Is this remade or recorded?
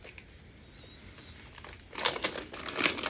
recorded